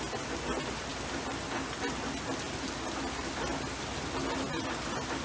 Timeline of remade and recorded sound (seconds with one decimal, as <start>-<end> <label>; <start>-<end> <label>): 0.0-5.2 recorded